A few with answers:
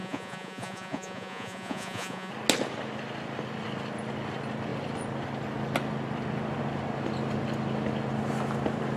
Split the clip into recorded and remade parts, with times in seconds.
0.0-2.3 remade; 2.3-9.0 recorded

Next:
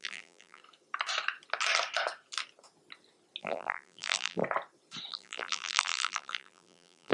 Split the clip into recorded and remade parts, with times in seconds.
0.0-0.6 remade; 0.6-3.4 recorded; 3.4-4.4 remade; 4.4-5.1 recorded; 5.1-7.1 remade